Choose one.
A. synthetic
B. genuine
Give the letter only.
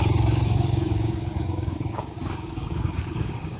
A